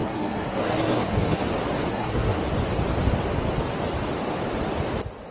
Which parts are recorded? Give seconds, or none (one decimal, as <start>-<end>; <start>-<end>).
1.4-1.9; 2.4-5.3